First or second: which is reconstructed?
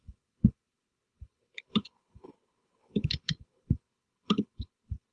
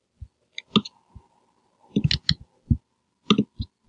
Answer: first